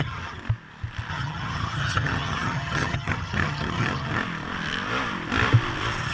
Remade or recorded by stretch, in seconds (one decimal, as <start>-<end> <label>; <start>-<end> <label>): 0.0-0.4 remade; 0.4-1.1 recorded; 1.1-4.2 remade; 4.2-6.1 recorded